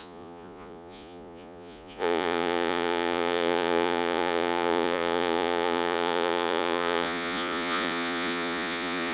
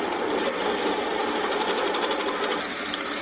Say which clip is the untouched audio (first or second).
second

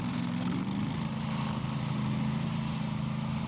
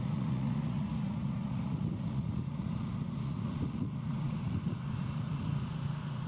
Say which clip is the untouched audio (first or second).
first